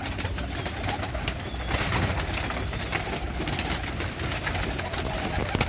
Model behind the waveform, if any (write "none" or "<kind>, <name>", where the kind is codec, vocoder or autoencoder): none